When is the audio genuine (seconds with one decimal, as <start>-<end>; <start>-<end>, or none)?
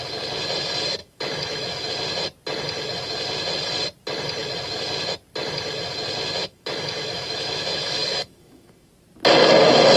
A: 0.0-1.0; 1.9-6.4; 8.9-10.0